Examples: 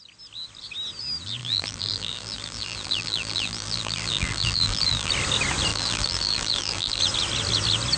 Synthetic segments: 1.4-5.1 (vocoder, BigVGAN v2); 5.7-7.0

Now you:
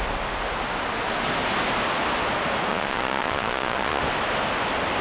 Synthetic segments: 2.7-4.0 (vocoder, Vocos)